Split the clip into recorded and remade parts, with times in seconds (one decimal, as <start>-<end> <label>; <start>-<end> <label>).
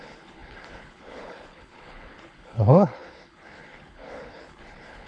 0.0-5.1 remade